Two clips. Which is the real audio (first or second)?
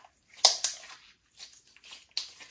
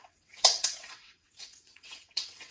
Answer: first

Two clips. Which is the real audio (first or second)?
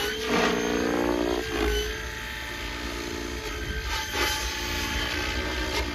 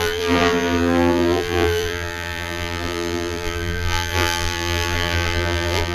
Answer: first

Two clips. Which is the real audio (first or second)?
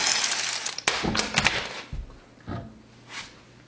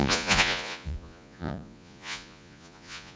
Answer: first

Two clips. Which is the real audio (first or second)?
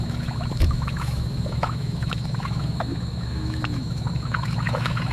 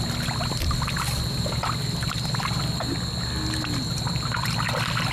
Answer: second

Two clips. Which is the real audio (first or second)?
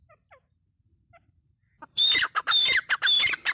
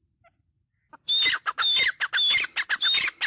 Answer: second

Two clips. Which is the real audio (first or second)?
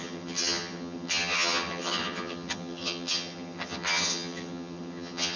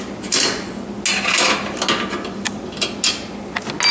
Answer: second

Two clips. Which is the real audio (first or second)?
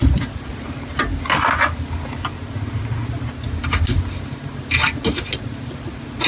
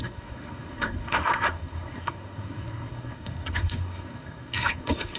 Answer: first